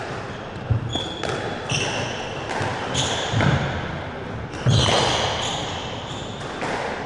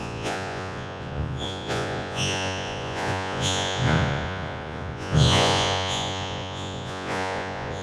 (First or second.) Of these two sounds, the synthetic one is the second